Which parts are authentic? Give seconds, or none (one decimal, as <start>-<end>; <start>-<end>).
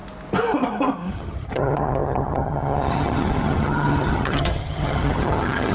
0.0-1.1